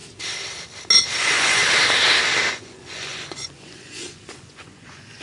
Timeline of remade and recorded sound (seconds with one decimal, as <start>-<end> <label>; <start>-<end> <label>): 0.0-1.2 recorded; 1.2-1.6 remade; 1.6-2.5 recorded; 2.5-5.2 remade